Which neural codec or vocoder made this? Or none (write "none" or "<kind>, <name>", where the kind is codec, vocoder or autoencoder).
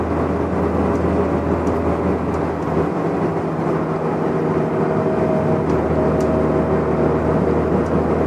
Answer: none